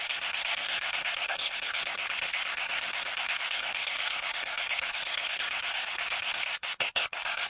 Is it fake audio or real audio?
fake